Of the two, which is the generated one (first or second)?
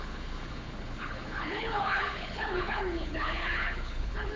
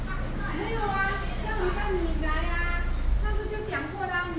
first